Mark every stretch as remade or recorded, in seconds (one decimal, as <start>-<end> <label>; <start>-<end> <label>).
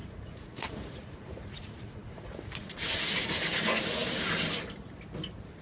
0.0-3.4 remade; 3.4-5.6 recorded